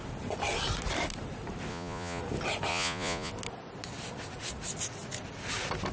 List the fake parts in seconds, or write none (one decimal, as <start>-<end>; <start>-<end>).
1.7-2.2; 2.7-3.3